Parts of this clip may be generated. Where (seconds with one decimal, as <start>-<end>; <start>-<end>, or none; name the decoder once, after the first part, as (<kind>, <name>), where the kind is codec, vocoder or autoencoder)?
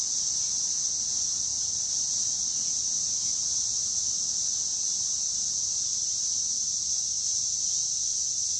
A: 1.5-2.3 (vocoder, BigVGAN v2); 4.9-8.0